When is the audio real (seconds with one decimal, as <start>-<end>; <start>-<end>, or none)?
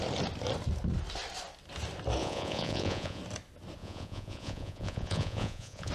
0.0-2.2; 3.2-3.8